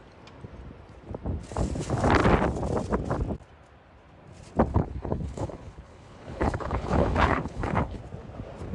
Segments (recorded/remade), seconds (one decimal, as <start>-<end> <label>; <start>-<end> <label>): 0.0-4.7 recorded; 4.7-8.0 remade; 8.0-8.7 recorded